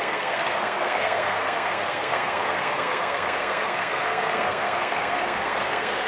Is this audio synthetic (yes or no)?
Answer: yes